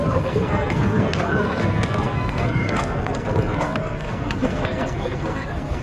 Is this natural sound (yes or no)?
no